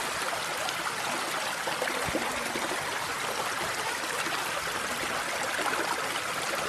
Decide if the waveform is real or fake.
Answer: real